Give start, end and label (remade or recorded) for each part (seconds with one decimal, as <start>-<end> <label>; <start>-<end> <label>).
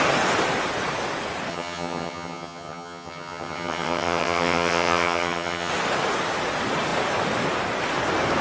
0.0-1.5 recorded; 1.5-5.7 remade; 5.7-8.4 recorded